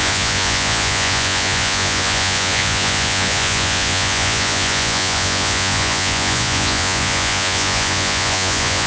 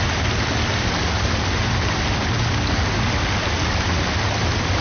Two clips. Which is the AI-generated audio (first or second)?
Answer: first